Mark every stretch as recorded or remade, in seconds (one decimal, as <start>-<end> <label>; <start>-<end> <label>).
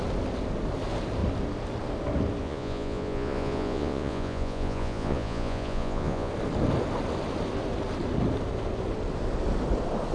0.0-2.4 recorded; 2.4-6.3 remade; 6.3-10.1 recorded